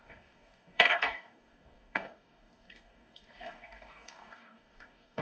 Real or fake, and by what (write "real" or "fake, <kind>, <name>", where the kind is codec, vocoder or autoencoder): fake, codec, DAC